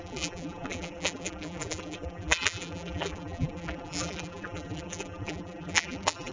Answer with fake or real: fake